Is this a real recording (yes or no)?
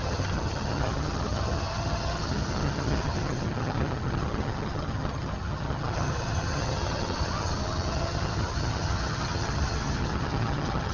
no